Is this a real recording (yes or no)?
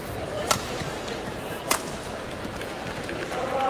no